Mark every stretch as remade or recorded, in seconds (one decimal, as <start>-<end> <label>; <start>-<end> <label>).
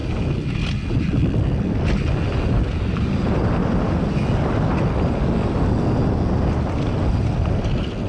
0.0-8.1 recorded